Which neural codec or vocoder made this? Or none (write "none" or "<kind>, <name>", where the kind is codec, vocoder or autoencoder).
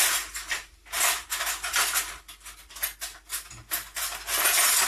none